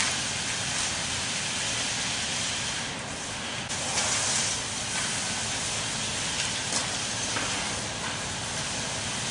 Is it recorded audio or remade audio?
recorded